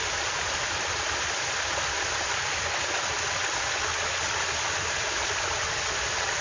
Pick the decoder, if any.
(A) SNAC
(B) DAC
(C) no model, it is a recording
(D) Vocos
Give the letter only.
C